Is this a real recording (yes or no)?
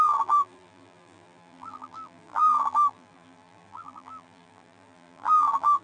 no